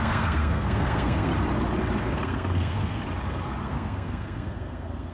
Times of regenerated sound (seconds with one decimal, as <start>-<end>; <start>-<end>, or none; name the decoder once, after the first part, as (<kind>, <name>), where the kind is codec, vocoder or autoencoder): 0.0-1.3 (codec, SNAC); 2.0-3.0; 3.6-5.1